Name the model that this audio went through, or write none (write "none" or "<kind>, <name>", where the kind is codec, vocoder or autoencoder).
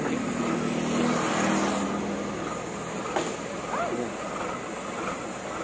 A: none